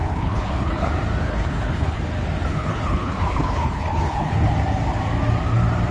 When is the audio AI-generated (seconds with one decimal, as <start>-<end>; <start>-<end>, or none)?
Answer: 0.0-0.9; 1.3-2.0; 2.5-4.5